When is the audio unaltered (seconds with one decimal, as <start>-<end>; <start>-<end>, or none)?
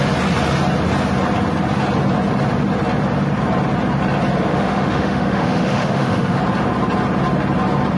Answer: 0.0-4.5; 6.4-8.0